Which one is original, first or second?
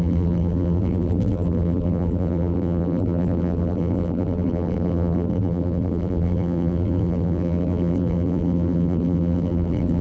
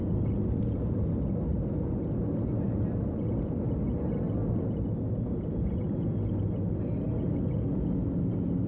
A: second